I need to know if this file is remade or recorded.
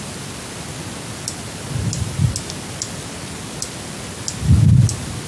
recorded